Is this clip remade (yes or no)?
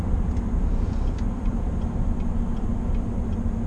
no